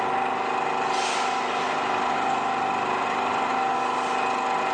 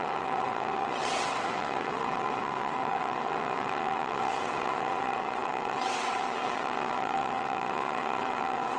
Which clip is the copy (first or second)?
second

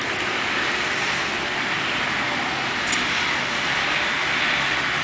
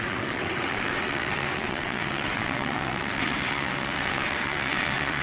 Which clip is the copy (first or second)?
second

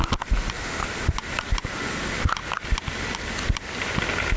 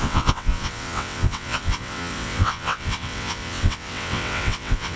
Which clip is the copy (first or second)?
second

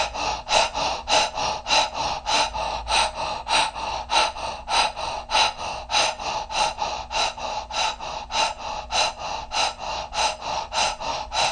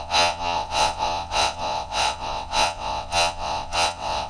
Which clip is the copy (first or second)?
second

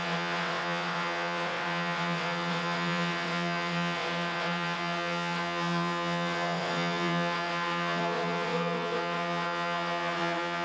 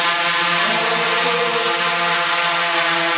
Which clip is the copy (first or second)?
first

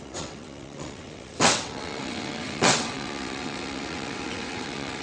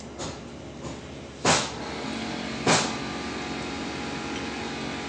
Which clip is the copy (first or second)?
first